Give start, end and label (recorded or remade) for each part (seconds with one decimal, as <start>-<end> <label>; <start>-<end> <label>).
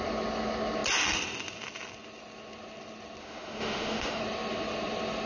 0.0-3.2 recorded; 3.2-4.2 remade; 4.2-5.3 recorded